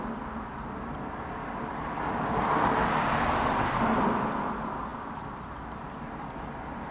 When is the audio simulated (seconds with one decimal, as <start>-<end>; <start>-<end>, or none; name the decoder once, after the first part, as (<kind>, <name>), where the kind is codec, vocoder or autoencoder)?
none